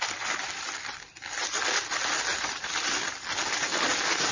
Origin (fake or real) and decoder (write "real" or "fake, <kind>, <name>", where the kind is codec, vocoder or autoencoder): real